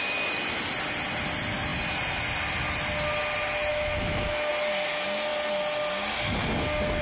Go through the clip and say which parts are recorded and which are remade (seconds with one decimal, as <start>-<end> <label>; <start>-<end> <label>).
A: 0.0-3.7 recorded; 3.7-4.5 remade; 4.5-7.0 recorded